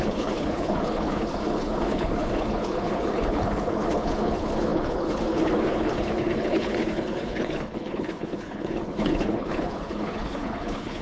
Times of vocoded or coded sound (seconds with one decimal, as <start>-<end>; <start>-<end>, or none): 0.0-11.0